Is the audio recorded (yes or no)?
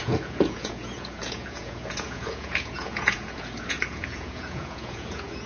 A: no